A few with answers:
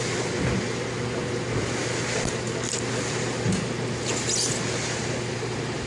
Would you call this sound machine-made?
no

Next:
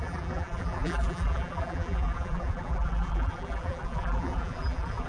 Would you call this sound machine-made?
yes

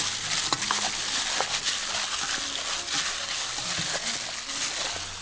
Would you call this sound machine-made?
no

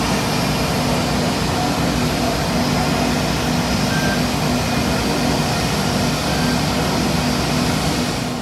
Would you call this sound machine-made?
no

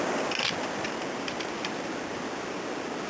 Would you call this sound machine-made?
no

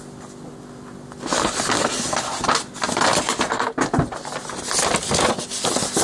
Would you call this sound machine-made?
no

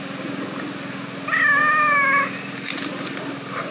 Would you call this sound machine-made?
no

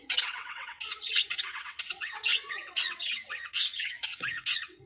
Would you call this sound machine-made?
yes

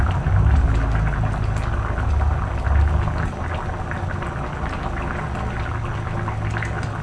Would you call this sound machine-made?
no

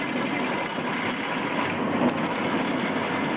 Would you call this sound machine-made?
no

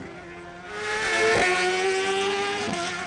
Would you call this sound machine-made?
no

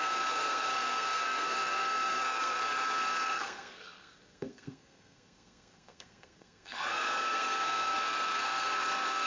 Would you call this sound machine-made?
yes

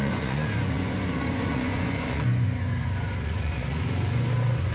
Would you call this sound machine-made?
yes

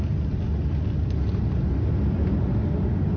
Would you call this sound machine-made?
no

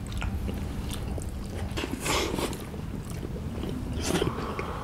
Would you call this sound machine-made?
no